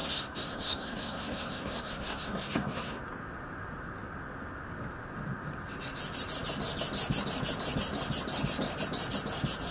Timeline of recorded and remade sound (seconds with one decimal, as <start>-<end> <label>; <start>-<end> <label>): 0.0-3.0 remade; 3.0-9.7 recorded